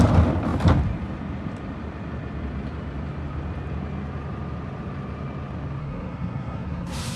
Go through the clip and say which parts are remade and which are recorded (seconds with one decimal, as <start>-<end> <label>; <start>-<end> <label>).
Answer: 0.0-5.8 recorded; 5.8-7.2 remade